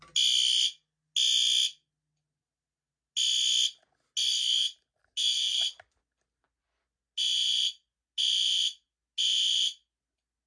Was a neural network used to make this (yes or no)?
no